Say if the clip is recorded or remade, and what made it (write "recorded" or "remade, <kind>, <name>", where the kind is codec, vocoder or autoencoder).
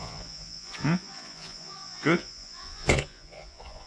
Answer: remade, vocoder, Vocos